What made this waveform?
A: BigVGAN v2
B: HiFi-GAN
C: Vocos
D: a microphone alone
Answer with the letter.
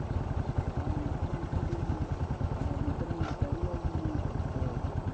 D